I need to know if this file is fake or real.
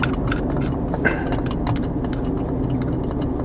real